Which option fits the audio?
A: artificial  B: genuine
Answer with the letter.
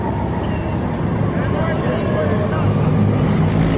B